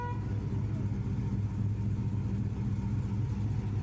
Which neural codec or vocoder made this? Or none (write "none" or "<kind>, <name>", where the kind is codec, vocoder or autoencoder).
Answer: none